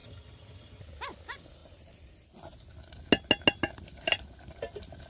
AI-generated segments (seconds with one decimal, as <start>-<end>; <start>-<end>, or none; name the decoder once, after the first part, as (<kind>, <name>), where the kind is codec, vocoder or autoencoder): 0.0-0.8 (vocoder, HiFi-GAN)